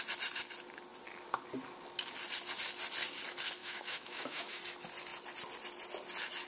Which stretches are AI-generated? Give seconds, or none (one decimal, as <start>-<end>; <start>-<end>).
3.6-4.6